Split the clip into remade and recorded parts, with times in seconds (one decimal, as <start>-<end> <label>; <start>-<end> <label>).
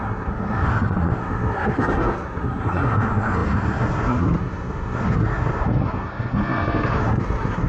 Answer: 0.0-7.7 remade